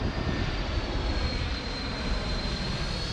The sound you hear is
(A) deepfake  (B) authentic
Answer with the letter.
B